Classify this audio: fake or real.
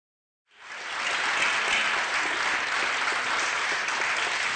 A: real